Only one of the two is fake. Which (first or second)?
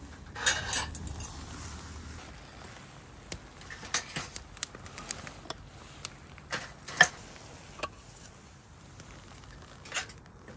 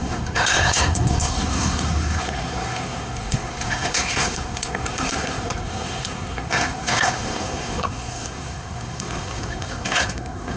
second